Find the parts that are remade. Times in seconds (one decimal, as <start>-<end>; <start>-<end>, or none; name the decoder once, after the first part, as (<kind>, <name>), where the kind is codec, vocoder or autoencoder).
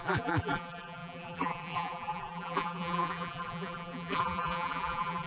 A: 0.0-5.3 (vocoder, BigVGAN v2)